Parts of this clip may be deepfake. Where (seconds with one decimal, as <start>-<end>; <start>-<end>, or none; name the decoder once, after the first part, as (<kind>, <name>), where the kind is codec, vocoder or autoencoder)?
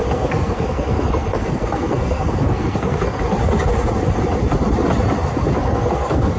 0.0-3.2 (codec, SNAC); 5.6-6.4